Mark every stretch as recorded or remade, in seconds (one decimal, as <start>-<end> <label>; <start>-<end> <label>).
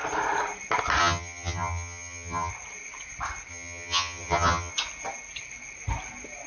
0.0-1.0 recorded; 1.0-2.5 remade; 2.5-3.5 recorded; 3.5-4.7 remade; 4.7-6.5 recorded